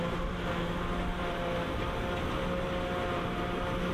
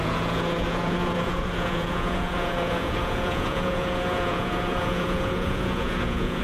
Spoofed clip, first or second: second